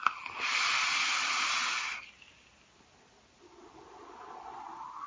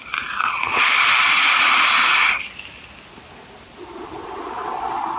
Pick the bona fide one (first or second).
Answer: first